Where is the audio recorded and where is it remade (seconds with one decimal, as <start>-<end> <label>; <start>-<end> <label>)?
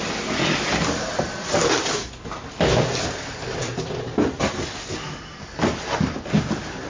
0.0-6.9 recorded